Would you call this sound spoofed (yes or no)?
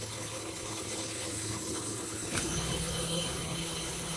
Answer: yes